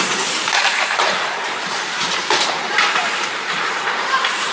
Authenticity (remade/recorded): remade